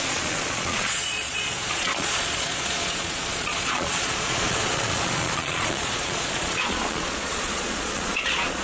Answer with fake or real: fake